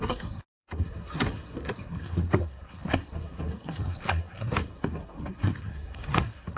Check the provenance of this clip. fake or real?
fake